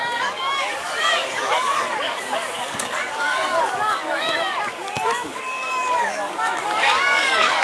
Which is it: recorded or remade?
remade